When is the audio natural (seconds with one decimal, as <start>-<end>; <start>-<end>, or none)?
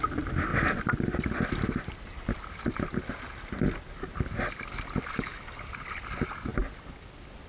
0.0-7.5